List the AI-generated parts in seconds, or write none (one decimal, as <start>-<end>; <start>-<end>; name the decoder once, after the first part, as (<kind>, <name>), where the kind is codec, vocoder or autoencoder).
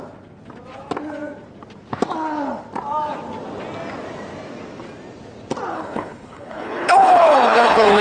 5.7-8.0 (codec, HILCodec)